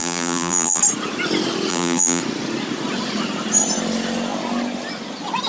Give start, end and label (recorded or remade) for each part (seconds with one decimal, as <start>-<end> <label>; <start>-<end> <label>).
0.0-0.8 remade; 0.8-1.7 recorded; 1.7-2.2 remade; 2.2-5.5 recorded